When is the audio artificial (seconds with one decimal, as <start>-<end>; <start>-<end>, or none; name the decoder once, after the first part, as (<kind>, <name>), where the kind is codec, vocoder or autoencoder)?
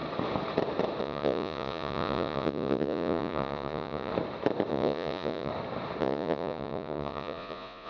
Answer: 1.0-4.1 (vocoder, Vocos); 4.7-5.5; 6.0-7.9